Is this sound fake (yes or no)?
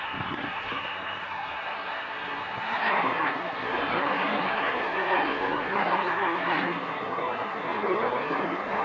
yes